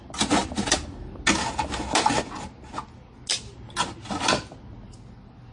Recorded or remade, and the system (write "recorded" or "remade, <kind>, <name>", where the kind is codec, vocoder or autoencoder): recorded